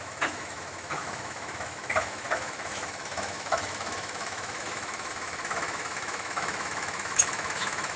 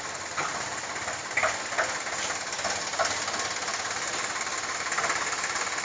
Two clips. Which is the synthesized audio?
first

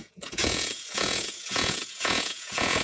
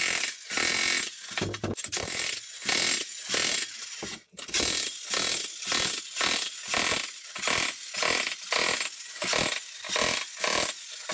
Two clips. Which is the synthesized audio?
first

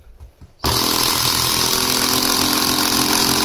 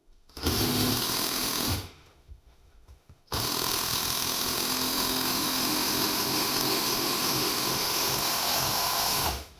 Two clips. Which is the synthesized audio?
second